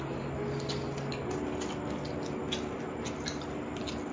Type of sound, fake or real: real